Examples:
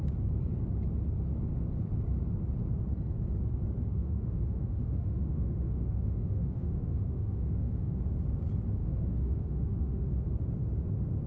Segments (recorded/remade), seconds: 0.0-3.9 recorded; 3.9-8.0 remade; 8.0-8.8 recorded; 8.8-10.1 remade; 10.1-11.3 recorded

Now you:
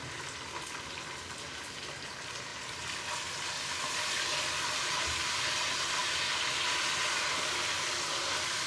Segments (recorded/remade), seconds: 0.0-8.7 recorded

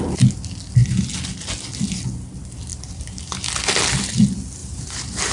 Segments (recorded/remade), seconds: 0.0-2.7 recorded; 2.7-3.5 remade; 3.5-4.6 recorded; 4.6-5.3 remade